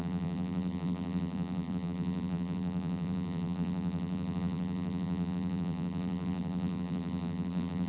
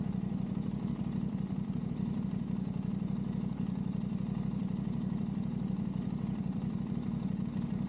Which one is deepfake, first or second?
first